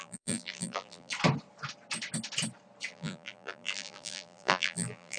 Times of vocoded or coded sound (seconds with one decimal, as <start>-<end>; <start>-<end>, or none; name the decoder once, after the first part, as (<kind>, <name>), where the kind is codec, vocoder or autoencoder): 0.0-1.1 (vocoder, BigVGAN v2); 2.9-5.2